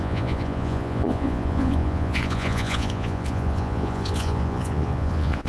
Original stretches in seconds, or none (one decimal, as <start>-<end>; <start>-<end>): none